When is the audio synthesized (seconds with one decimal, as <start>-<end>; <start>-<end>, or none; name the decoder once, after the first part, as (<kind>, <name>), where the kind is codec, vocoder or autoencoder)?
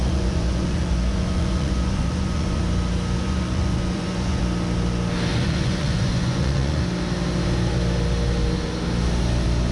0.0-2.6 (vocoder, Vocos); 3.2-4.4; 5.3-6.8